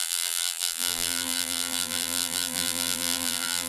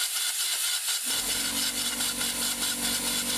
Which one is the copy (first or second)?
first